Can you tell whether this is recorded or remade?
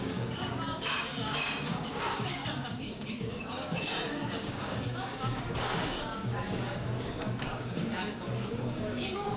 remade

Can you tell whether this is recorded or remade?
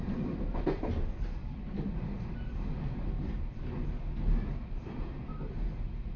recorded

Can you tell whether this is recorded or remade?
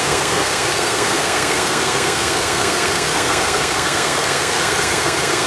remade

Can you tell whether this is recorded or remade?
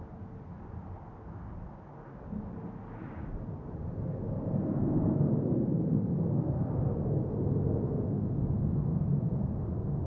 recorded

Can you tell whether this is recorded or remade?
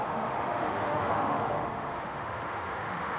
remade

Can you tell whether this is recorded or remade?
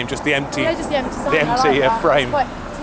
recorded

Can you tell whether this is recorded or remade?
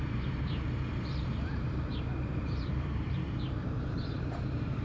remade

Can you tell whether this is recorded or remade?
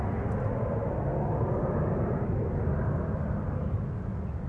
recorded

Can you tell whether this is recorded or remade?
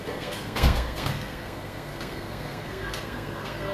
remade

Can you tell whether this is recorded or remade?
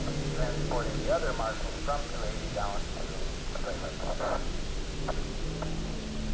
recorded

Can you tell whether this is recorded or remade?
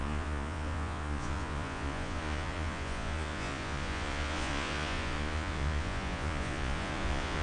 remade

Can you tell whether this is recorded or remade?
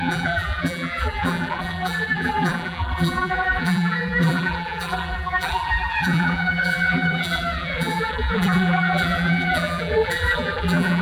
remade